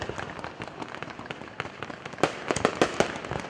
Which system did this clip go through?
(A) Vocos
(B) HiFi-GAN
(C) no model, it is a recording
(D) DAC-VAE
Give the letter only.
C